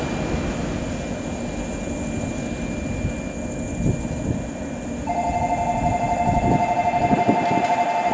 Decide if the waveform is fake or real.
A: real